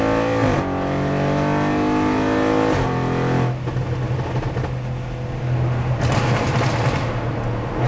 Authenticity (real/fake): real